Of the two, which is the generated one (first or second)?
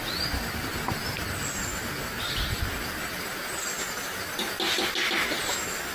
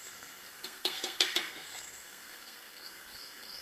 second